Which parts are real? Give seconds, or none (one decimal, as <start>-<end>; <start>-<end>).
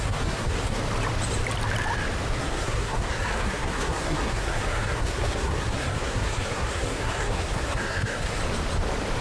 0.8-2.4; 8.4-9.2